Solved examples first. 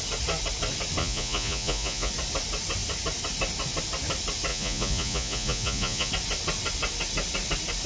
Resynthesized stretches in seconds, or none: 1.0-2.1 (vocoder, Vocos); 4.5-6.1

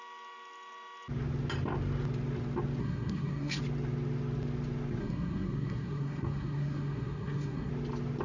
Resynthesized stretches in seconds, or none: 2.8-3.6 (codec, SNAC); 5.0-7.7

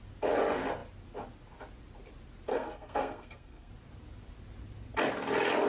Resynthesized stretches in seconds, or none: 2.5-3.7 (codec, SNAC)

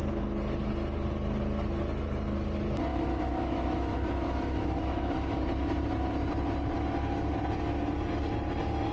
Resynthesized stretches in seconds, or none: 2.9-5.4 (autoencoder, DAC-VAE)

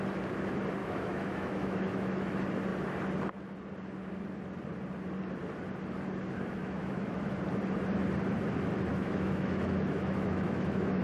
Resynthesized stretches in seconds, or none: 0.8-2.3 (autoencoder, DAC-VAE); 6.6-7.2; 8.9-11.0

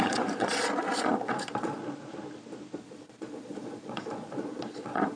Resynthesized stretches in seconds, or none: 0.0-1.8 (vocoder, Vocos); 2.8-5.2